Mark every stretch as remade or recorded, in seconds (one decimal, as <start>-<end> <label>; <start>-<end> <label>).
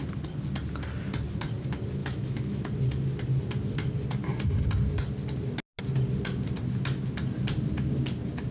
0.0-2.0 recorded; 2.0-2.7 remade; 2.7-8.5 recorded